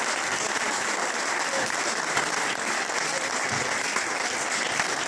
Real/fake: real